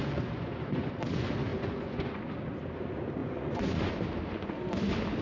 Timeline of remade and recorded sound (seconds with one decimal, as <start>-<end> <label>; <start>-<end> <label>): 0.0-0.9 remade; 0.9-1.5 recorded; 1.5-2.2 remade; 2.2-3.2 recorded; 3.2-3.9 remade; 3.9-5.2 recorded